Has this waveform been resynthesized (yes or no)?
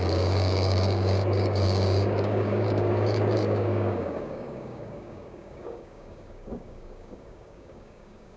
yes